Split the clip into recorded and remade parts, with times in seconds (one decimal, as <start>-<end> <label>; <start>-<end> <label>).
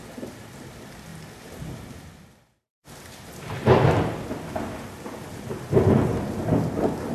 0.0-7.1 recorded